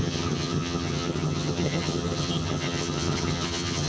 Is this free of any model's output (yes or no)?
no